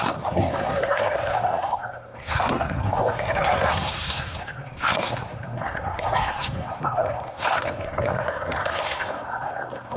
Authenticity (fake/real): fake